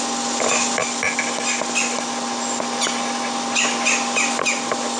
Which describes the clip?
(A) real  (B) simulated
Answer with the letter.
A